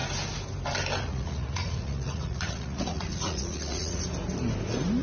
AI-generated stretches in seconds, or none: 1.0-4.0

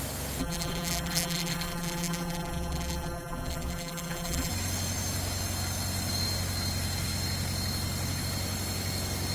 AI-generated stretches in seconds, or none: 0.4-4.5

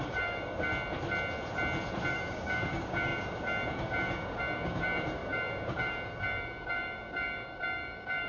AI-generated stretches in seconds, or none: 0.0-0.7; 2.1-8.3